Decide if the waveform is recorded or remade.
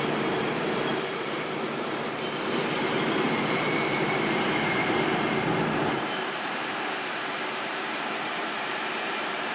remade